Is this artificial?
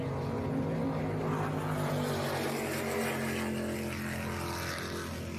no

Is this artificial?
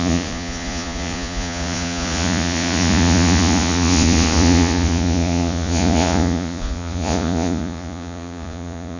yes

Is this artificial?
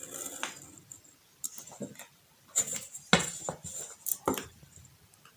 no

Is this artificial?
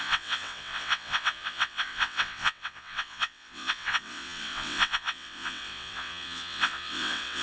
yes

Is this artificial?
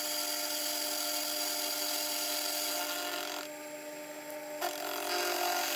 no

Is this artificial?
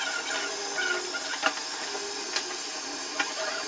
no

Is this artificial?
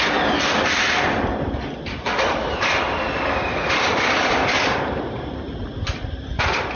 no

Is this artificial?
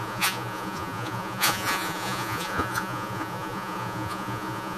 yes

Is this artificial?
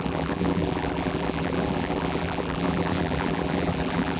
yes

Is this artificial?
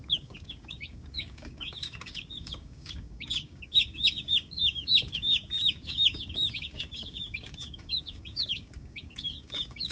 yes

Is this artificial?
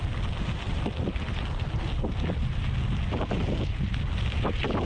no